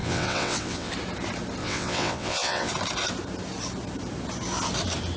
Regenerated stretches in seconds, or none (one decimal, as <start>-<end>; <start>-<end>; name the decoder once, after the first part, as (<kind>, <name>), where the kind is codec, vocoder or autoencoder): 0.0-0.9 (vocoder, WaveNeXt); 1.6-2.7